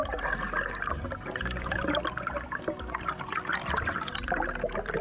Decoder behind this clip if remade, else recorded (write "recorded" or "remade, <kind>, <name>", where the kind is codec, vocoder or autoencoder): recorded